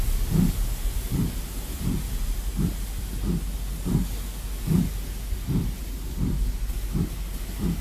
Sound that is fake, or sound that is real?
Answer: real